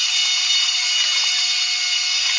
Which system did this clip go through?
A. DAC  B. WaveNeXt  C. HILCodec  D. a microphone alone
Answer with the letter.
D